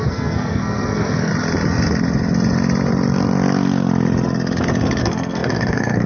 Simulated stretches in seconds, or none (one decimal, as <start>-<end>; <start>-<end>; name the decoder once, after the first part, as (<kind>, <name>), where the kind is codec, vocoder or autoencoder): 0.0-1.3 (codec, SNAC); 5.0-6.1